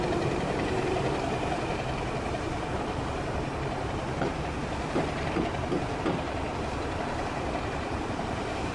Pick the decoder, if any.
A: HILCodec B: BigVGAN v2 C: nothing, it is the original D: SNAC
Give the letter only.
B